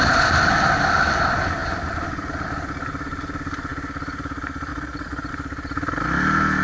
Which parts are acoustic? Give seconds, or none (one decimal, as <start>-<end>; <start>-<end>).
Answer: 0.0-4.7; 5.3-6.6